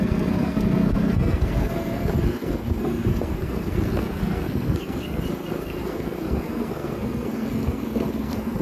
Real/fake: fake